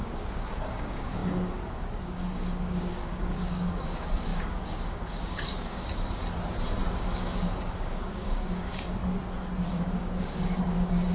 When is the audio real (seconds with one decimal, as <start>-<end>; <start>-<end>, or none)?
6.2-6.9; 9.0-9.7